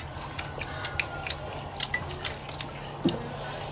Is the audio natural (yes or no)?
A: yes